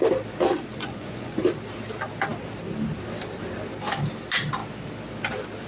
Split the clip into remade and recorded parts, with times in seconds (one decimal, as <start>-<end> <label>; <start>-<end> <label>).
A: 0.0-0.7 recorded; 0.7-1.4 remade; 1.4-5.7 recorded